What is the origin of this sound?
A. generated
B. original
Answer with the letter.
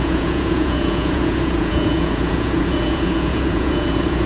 A